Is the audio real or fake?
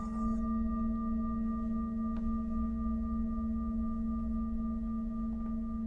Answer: real